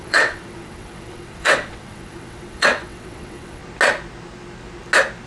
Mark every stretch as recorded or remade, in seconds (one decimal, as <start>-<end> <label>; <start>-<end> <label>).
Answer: 0.0-3.6 remade; 3.6-5.3 recorded